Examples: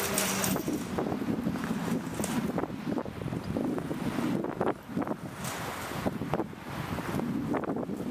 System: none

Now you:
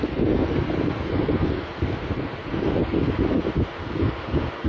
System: none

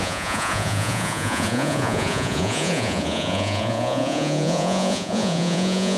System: vocoder, Vocos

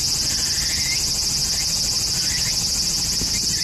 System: none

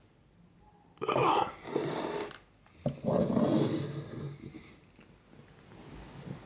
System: none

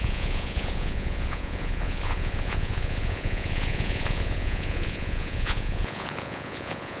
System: vocoder, Vocos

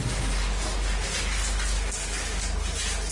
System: none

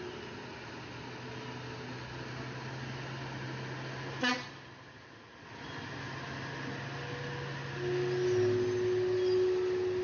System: none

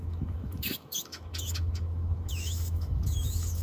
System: autoencoder, DAC-VAE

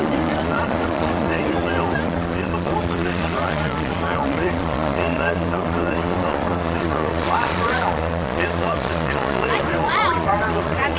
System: vocoder, Vocos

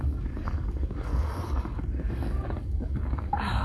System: codec, DAC